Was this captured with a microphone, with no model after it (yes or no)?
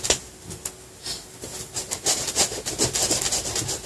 yes